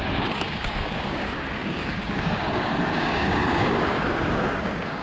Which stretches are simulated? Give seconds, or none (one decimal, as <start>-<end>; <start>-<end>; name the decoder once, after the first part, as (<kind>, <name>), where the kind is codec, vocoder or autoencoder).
0.0-5.0 (codec, DAC)